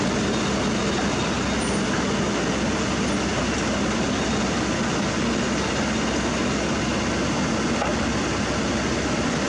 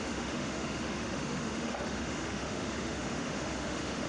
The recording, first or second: first